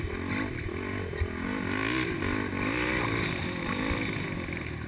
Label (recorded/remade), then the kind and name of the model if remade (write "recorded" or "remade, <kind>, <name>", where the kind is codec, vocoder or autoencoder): recorded